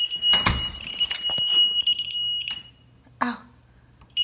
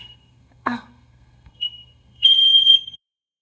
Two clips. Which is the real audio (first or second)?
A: first